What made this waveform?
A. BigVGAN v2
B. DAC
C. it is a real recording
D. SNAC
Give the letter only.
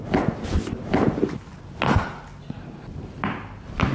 C